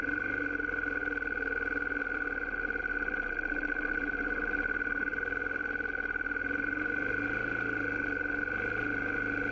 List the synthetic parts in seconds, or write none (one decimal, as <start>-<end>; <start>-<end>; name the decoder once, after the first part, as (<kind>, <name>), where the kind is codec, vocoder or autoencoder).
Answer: none